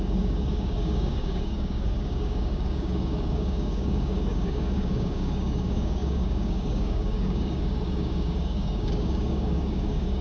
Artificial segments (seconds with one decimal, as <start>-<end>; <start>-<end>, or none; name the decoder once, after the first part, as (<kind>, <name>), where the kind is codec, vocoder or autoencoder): 0.0-10.2 (codec, DAC)

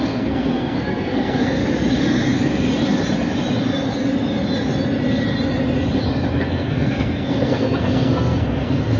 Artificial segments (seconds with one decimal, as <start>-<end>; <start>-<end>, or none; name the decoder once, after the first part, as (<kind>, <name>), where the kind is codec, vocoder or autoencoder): 0.0-1.6 (codec, SNAC); 6.4-9.0

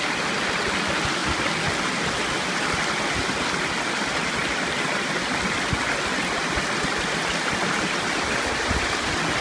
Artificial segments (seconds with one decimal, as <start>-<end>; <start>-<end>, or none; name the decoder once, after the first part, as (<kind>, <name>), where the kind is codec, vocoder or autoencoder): none

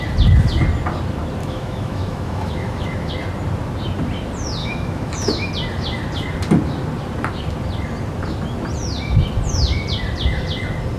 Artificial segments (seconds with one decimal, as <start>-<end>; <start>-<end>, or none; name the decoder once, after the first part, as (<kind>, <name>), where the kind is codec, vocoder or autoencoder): 1.4-3.1 (autoencoder, DAC-VAE); 4.6-5.5

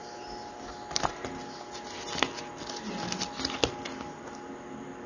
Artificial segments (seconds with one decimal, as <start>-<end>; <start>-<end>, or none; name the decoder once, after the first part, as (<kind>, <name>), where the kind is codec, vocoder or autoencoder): none

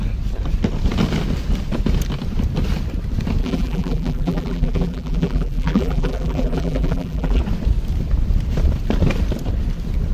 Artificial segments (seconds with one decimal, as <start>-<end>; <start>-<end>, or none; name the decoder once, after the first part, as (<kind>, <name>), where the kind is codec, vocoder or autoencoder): 3.4-7.4 (vocoder, BigVGAN v2)

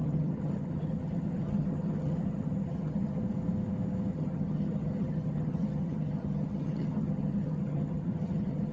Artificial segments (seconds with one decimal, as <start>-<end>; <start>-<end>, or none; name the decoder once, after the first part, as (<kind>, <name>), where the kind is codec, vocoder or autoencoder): 0.0-3.2 (vocoder, HiFi-GAN); 4.1-8.7